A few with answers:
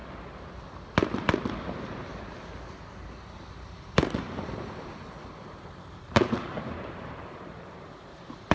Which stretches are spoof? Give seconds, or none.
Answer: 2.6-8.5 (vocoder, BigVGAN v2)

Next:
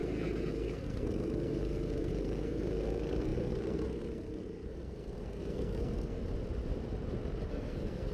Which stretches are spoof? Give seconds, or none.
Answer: 0.0-6.2 (codec, SNAC); 7.5-8.1

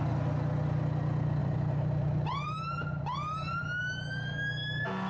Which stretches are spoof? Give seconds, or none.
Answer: 1.4-3.8 (vocoder, BigVGAN v2)

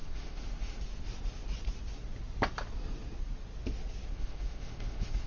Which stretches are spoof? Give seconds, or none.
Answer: 0.0-0.8 (autoencoder, DAC-VAE); 4.1-5.3